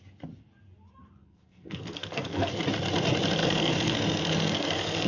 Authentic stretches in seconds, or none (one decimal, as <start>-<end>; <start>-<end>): 0.0-1.2; 2.5-3.4